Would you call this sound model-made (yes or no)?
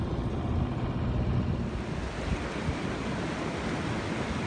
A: no